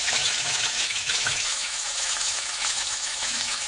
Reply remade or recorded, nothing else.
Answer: remade